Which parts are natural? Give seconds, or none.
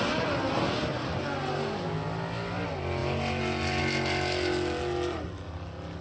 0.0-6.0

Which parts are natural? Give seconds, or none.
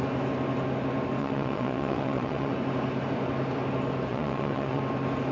0.0-1.2; 2.5-4.1; 4.8-5.3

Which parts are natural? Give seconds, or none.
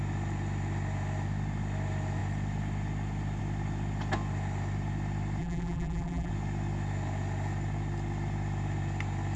0.0-5.4; 6.3-9.4